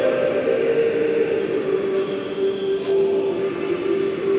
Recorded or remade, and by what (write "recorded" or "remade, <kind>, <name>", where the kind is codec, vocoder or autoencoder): recorded